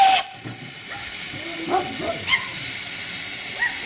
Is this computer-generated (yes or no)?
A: no